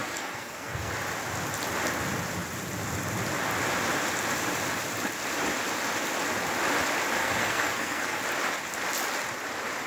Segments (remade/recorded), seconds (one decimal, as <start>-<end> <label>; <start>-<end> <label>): 0.0-0.9 remade; 0.9-7.2 recorded; 7.2-8.2 remade; 8.2-9.9 recorded